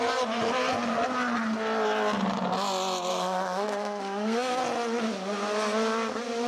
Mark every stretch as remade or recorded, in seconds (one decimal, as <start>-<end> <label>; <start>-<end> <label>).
0.0-3.1 recorded; 3.1-4.6 remade; 4.6-6.5 recorded